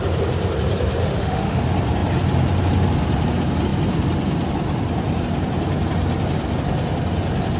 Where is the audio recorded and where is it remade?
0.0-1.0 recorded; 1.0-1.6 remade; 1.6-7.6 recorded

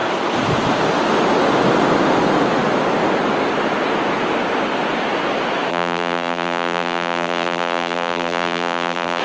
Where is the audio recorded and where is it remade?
0.0-5.7 recorded; 5.7-9.2 remade